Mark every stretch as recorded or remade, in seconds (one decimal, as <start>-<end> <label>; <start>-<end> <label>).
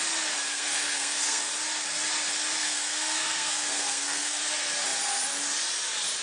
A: 0.0-0.5 recorded; 0.5-1.4 remade; 1.4-2.6 recorded; 2.6-4.4 remade; 4.4-6.2 recorded